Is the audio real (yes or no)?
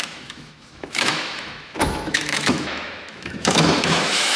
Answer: no